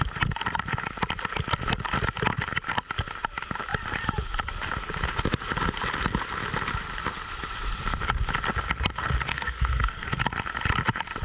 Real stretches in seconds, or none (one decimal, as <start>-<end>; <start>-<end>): 0.0-9.3; 10.2-11.2